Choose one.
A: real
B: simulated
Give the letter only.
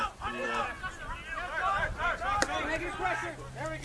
A